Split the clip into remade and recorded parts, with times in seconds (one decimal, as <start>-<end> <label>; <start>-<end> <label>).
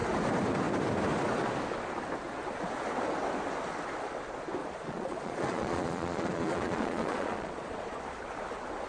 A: 0.0-4.6 recorded; 4.6-8.0 remade; 8.0-8.9 recorded